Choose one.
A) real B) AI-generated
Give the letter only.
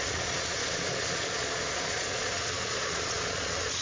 B